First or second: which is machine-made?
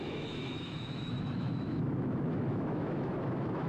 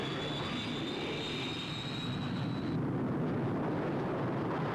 first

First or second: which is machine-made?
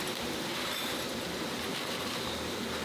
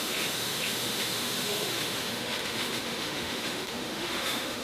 second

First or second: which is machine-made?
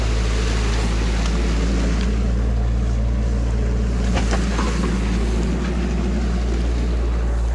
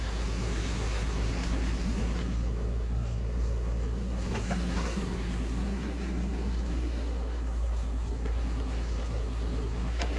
second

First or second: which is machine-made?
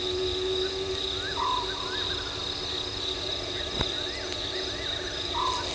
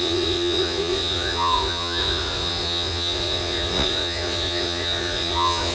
second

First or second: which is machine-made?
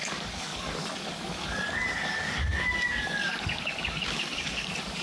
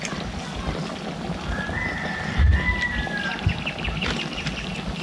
first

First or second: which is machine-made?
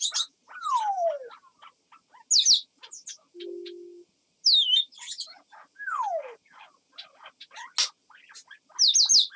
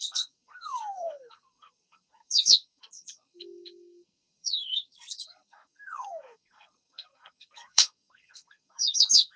second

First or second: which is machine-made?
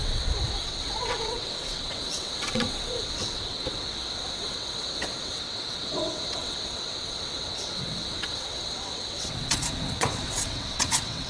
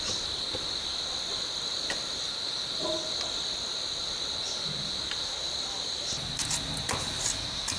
first